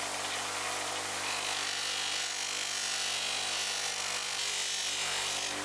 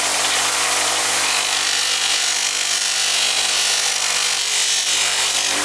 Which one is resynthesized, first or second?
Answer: second